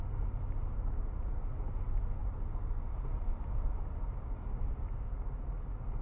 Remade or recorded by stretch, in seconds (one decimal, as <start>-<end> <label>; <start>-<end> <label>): 0.0-6.0 recorded